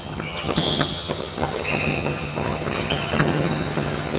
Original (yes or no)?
no